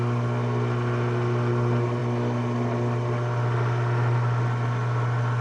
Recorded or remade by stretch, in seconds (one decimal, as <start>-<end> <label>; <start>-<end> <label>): 0.0-5.4 recorded